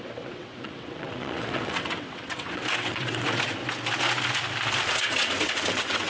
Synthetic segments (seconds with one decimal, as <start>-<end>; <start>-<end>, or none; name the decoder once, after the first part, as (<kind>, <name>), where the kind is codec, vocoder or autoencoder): 0.0-3.6 (vocoder, WaveNeXt); 4.9-6.1